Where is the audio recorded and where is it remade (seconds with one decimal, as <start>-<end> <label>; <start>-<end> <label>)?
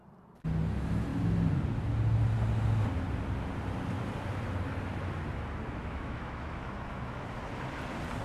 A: 0.0-5.8 recorded; 5.8-7.4 remade; 7.4-8.2 recorded